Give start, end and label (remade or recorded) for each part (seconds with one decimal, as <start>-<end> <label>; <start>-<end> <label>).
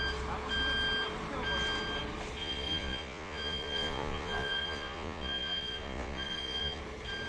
0.0-2.4 recorded; 2.4-6.8 remade; 6.8-7.3 recorded